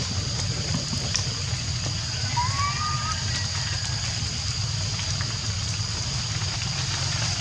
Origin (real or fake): real